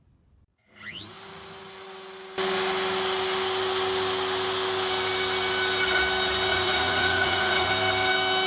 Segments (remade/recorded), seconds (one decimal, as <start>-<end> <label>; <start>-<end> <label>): 0.0-0.5 recorded; 0.5-1.0 remade; 1.0-6.5 recorded; 6.5-7.7 remade; 7.7-8.5 recorded